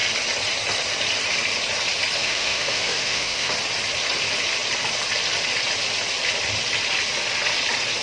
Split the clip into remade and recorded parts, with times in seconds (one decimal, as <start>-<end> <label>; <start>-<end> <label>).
0.0-2.2 recorded; 2.2-3.5 remade; 3.5-8.0 recorded